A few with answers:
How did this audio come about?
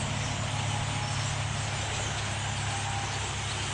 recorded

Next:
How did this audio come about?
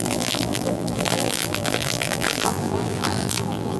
remade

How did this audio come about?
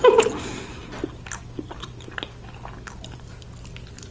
recorded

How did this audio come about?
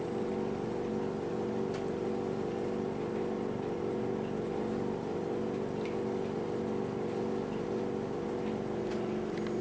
recorded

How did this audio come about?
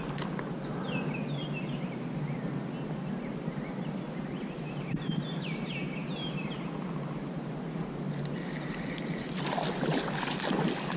recorded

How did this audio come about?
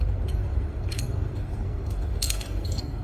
remade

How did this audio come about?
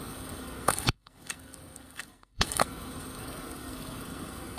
remade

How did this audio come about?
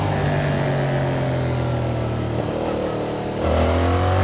recorded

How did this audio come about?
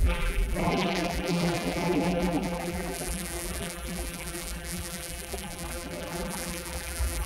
remade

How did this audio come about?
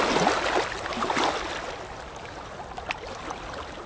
recorded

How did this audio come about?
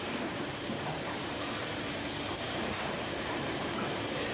remade